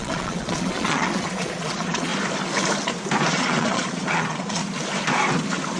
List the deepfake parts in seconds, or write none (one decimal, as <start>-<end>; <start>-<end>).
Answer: 0.0-2.1; 3.3-4.6